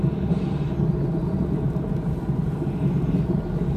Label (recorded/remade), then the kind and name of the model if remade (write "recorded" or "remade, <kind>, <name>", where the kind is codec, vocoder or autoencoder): recorded